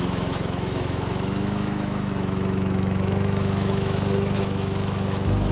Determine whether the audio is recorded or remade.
remade